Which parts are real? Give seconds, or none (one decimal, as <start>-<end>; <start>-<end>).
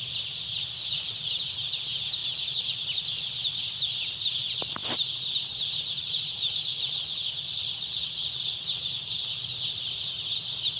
0.0-10.8